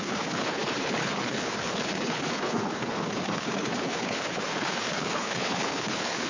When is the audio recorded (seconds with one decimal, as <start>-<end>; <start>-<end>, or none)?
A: none